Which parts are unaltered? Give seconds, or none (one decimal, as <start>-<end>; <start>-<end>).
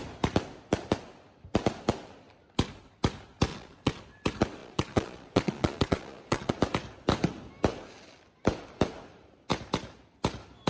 0.0-3.5; 4.0-4.6; 6.5-10.7